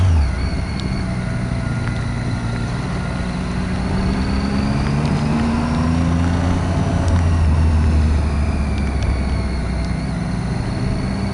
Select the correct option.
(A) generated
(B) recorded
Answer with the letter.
B